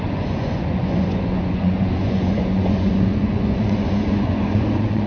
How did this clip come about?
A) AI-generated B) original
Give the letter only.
A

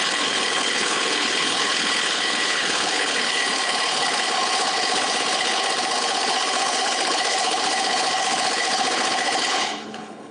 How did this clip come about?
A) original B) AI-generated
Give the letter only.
B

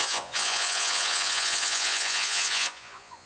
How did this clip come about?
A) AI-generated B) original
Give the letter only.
A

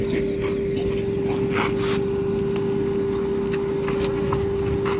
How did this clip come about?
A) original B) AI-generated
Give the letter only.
A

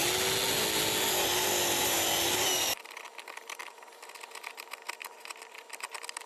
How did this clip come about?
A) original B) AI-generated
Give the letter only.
A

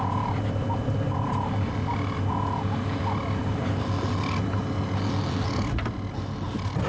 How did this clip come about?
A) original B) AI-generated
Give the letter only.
A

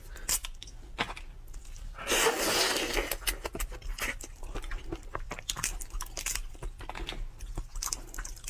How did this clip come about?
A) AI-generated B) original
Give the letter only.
B